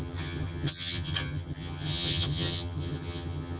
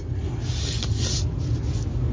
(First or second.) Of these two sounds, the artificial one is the first